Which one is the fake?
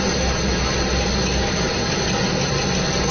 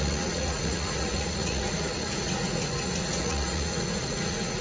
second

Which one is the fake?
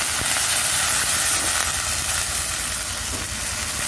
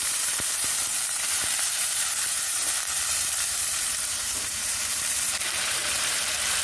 second